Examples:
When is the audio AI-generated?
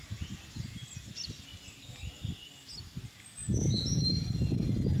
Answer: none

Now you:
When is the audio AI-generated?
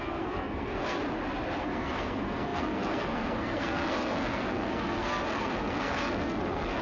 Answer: 0.0-1.0 (codec, SNAC); 1.6-6.8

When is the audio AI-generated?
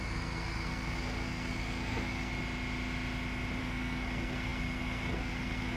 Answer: 0.0-2.3 (codec, SNAC); 3.6-5.8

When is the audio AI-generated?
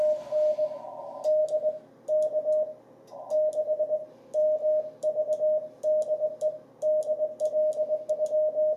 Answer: none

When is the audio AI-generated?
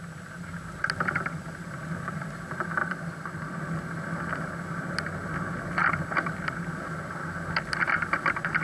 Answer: 2.8-3.6 (vocoder, BigVGAN v2)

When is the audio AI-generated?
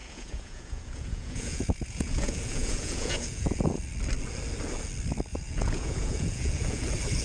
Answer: 0.0-3.8 (vocoder, Vocos); 5.3-6.8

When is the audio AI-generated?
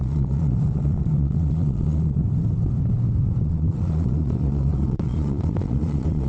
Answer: 0.0-2.2 (vocoder, Vocos); 3.4-6.3